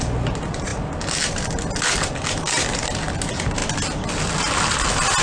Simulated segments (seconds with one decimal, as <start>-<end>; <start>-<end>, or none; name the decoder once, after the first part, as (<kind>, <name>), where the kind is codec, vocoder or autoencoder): none